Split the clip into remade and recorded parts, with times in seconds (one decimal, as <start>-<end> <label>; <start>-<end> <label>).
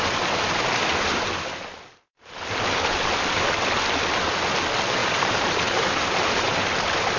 0.0-5.0 recorded; 5.0-6.7 remade; 6.7-7.2 recorded